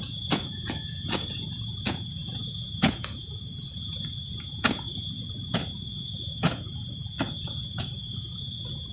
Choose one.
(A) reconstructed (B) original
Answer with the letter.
A